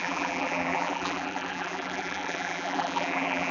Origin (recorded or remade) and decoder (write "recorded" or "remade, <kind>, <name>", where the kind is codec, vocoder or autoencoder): remade, vocoder, BigVGAN v2